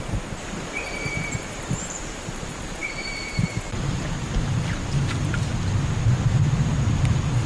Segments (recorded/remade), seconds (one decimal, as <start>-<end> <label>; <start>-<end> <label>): 0.0-5.5 remade; 5.5-6.1 recorded; 6.1-7.5 remade